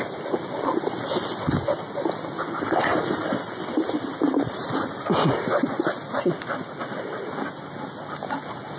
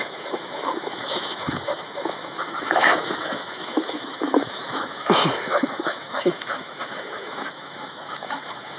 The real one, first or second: first